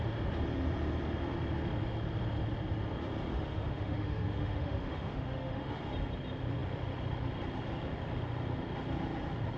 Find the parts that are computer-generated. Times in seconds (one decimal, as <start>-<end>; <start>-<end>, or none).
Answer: 3.3-5.8